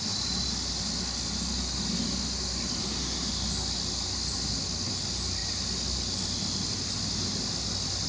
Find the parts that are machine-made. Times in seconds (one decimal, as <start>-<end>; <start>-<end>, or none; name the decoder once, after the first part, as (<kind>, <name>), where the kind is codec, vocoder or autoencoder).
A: 2.8-3.3 (autoencoder, DAC-VAE)